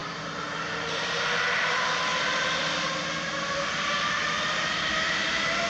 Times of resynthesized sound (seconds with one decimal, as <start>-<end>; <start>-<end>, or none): 0.0-1.1; 2.1-5.7